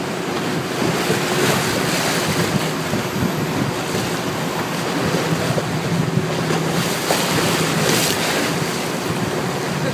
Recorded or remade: recorded